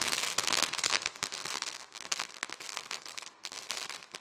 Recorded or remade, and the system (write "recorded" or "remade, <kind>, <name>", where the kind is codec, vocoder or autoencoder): remade, codec, SNAC